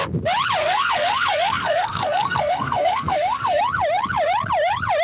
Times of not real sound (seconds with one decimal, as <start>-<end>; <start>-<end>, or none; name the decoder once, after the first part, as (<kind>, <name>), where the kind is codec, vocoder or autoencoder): 0.6-3.6 (codec, SNAC)